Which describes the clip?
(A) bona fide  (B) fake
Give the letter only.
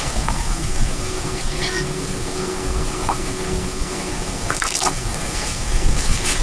B